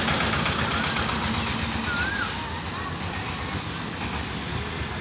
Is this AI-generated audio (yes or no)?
no